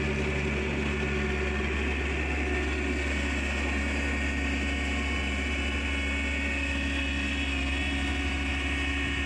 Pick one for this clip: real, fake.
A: real